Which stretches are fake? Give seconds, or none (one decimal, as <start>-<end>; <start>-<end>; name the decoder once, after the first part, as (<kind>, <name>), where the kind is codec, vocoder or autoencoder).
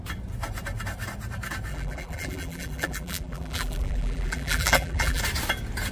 1.7-5.2 (vocoder, BigVGAN v2)